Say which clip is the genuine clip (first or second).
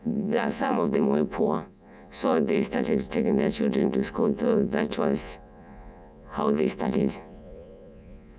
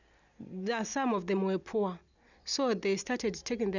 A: second